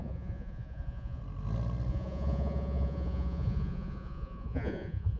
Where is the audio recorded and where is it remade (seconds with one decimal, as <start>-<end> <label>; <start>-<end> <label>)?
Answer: 0.0-1.2 remade; 1.2-1.9 recorded; 1.9-5.2 remade